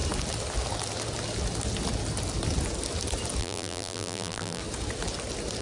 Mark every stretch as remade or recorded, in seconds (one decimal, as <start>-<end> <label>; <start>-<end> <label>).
0.0-3.4 recorded; 3.4-4.6 remade; 4.6-5.6 recorded